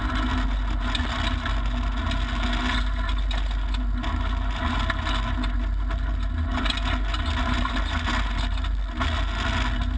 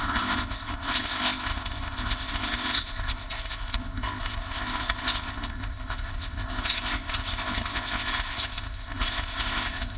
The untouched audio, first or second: first